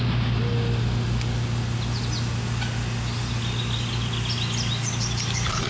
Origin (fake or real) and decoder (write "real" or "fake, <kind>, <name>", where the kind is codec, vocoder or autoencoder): real